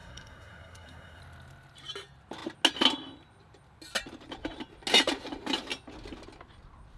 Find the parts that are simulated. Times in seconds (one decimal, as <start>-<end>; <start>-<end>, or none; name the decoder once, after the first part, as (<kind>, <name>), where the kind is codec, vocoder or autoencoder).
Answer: 0.0-1.2 (codec, SNAC)